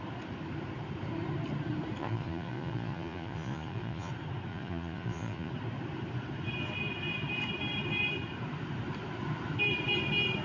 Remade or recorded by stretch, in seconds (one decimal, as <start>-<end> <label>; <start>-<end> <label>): 0.0-2.0 recorded; 2.0-4.1 remade; 4.1-4.5 recorded; 4.5-5.5 remade; 5.5-10.4 recorded